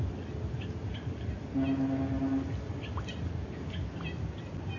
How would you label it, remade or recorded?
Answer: recorded